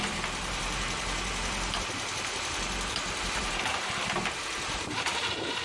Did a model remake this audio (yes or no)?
yes